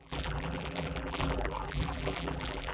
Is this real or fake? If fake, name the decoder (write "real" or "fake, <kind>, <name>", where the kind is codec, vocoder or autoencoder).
fake, vocoder, BigVGAN v2